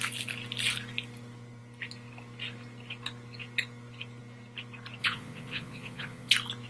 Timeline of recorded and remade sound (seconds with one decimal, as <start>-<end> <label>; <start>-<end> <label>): 0.0-5.0 recorded; 5.0-6.3 remade; 6.3-6.7 recorded